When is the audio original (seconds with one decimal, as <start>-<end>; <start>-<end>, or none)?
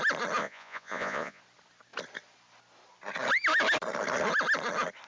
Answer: 0.0-0.4; 1.4-5.1